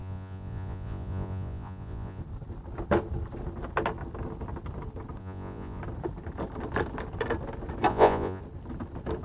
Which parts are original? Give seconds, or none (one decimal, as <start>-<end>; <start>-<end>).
2.2-5.2; 5.8-7.9; 8.4-9.2